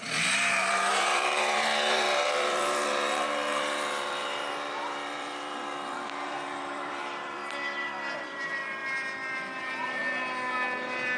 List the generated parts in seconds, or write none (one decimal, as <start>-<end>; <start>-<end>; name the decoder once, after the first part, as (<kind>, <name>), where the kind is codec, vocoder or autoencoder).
0.0-7.4 (vocoder, BigVGAN v2); 8.2-8.8; 9.6-10.0